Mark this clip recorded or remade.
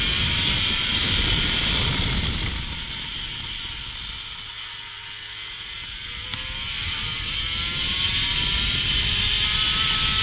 recorded